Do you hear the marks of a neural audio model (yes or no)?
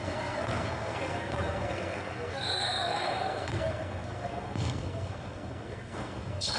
yes